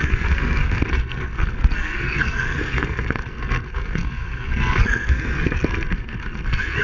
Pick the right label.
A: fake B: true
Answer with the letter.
A